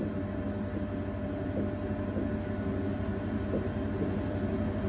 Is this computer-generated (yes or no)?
no